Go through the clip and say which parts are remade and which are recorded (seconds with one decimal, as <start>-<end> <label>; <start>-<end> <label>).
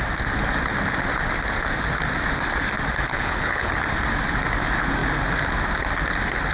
0.0-3.1 recorded; 3.1-3.7 remade; 3.7-6.5 recorded